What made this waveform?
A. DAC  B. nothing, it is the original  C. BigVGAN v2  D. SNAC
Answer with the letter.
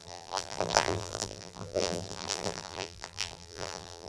C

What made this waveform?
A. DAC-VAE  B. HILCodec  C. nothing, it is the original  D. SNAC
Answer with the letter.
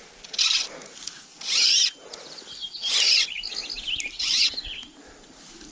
C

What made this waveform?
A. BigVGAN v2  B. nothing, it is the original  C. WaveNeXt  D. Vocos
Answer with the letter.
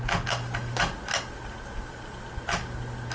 B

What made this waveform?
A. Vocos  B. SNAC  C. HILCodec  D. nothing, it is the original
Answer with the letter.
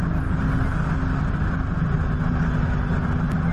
D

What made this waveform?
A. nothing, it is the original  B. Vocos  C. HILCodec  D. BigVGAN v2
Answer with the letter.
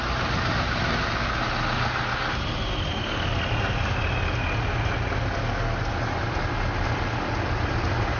A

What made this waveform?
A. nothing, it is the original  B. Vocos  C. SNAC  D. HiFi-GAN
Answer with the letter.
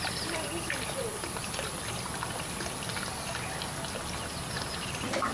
A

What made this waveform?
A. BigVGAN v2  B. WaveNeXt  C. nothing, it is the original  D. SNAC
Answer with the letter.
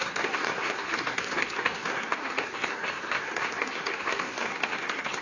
D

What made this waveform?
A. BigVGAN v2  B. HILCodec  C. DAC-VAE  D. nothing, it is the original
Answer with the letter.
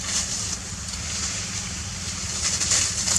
D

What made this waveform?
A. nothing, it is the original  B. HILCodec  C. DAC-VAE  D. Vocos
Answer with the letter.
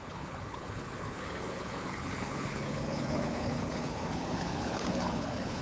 B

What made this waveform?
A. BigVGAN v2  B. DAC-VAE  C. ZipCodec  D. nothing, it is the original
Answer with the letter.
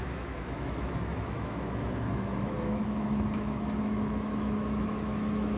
B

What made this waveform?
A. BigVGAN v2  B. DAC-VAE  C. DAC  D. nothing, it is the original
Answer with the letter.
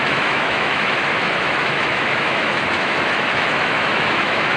B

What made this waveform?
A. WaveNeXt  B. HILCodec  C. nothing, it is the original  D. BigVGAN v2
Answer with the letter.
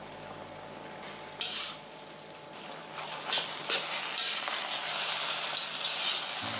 D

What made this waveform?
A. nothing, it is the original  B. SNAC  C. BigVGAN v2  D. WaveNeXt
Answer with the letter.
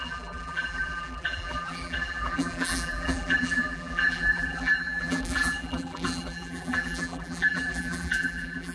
C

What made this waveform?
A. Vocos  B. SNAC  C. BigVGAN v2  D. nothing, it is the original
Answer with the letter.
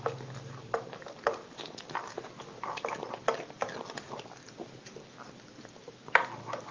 D